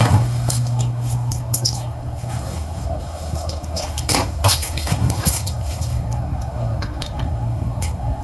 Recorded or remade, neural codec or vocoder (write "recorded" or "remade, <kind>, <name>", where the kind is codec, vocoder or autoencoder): remade, codec, SNAC